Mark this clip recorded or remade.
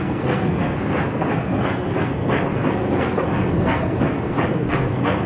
remade